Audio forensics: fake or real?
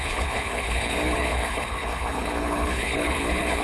fake